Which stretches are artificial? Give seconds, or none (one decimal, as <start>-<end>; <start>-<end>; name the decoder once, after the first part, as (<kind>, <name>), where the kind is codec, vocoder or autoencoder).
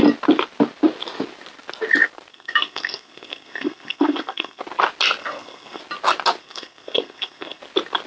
2.3-4.6 (codec, SNAC); 5.2-5.8; 6.4-7.6